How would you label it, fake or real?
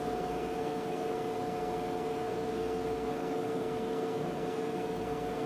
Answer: fake